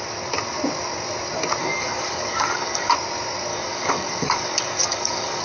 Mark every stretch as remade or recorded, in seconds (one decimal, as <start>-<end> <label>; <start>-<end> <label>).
0.0-1.6 recorded; 1.6-2.9 remade; 2.9-3.5 recorded; 3.5-5.4 remade